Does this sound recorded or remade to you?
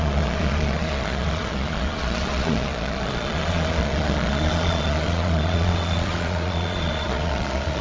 remade